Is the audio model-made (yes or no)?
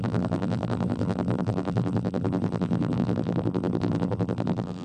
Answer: yes